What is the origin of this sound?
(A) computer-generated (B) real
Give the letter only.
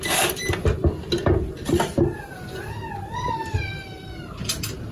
B